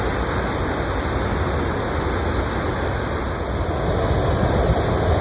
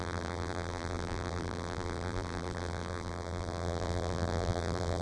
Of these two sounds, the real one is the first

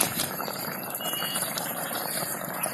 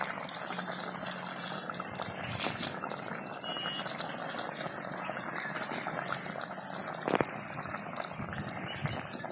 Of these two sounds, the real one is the second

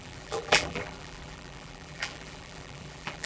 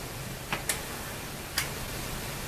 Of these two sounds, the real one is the second